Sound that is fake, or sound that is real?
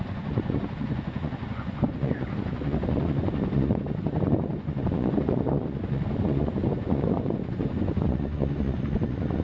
fake